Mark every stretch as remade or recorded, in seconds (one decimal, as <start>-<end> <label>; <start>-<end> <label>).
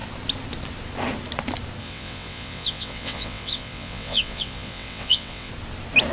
0.0-1.8 recorded; 1.8-5.5 remade; 5.5-6.1 recorded